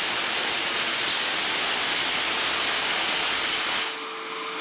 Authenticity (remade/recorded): recorded